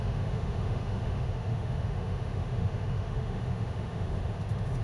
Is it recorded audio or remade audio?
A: remade